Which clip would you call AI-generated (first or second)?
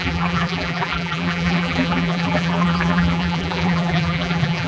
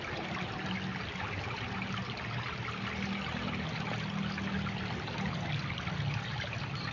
first